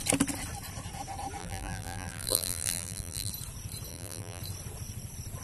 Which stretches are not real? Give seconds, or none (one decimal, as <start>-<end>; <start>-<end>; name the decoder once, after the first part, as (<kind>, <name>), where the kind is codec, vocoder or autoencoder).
1.4-3.3 (vocoder, BigVGAN v2); 3.9-4.4